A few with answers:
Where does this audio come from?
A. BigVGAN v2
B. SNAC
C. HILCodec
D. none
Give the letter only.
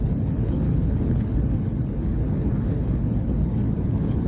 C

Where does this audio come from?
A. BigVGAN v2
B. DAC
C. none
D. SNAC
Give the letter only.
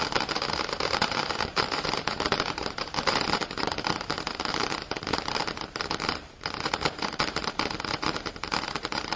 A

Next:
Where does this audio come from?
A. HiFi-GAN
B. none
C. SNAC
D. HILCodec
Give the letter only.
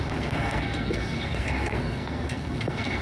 C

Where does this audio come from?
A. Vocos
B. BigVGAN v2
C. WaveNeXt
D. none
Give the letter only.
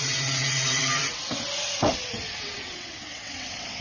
C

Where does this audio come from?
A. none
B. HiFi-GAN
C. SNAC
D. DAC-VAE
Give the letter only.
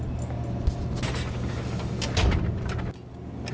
A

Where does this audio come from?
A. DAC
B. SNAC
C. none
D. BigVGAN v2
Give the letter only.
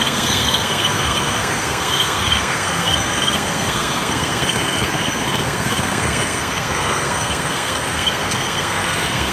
B